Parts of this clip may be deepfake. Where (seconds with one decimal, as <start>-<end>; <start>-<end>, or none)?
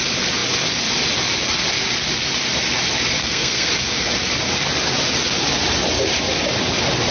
3.2-3.7